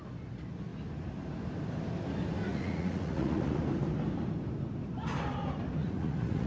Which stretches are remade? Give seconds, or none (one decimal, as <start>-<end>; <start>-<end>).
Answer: 2.5-3.6; 5.8-6.5